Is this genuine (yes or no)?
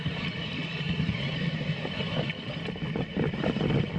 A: yes